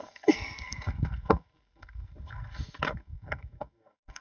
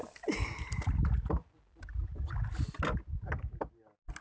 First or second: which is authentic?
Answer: second